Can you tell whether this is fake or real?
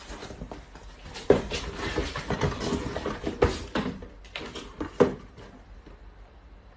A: real